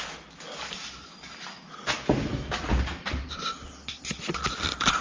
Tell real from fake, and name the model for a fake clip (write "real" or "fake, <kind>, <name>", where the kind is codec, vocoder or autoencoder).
real